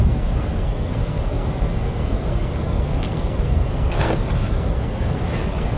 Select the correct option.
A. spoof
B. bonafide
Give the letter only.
A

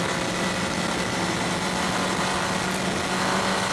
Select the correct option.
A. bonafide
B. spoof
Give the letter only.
A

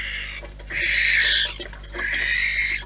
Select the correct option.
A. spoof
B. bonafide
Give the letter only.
B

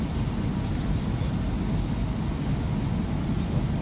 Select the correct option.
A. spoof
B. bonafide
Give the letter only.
B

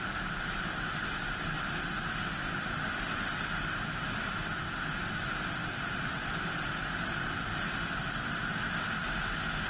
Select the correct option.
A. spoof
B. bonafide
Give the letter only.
B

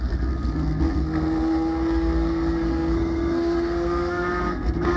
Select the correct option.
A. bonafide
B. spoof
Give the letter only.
B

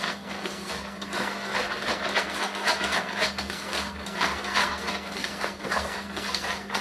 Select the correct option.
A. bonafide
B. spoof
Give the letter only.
B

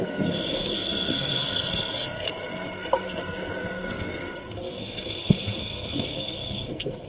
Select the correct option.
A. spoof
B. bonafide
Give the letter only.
A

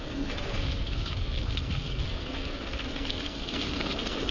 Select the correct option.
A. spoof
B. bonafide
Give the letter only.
A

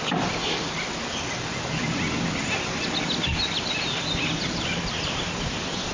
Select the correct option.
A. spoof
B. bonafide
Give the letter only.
B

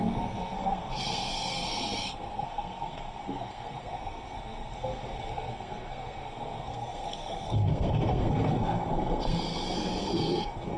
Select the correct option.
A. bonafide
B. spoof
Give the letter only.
B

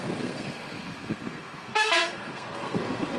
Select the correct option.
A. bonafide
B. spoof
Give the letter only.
B